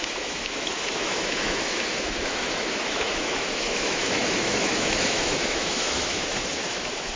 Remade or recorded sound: remade